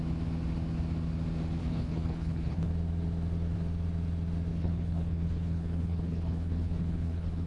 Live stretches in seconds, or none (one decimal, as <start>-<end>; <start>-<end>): 0.0-1.6; 2.7-4.5